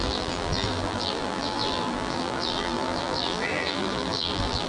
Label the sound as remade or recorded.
remade